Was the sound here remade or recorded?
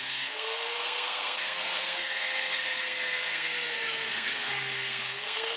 remade